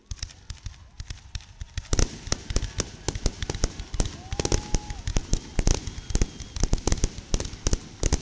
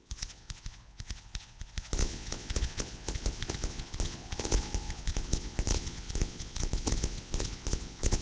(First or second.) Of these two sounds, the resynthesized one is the second